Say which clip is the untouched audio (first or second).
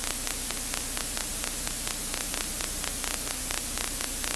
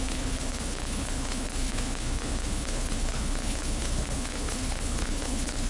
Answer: first